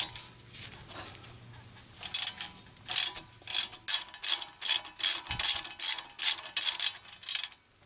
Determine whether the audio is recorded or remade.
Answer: recorded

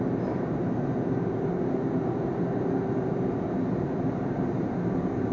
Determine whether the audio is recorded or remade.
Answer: remade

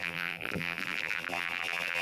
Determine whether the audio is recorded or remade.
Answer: remade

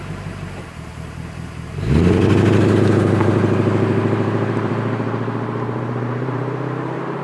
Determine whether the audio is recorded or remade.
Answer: remade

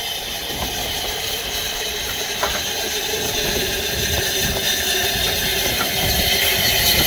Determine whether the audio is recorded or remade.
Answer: remade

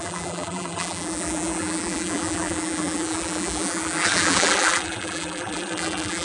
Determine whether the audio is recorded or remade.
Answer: remade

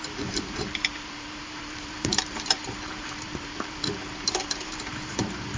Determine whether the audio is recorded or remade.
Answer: remade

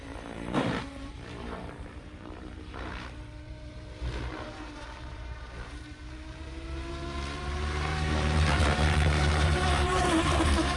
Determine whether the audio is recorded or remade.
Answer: remade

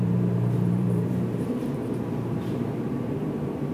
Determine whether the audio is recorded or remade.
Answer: remade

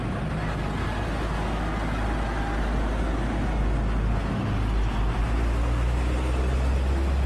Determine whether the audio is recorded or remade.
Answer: recorded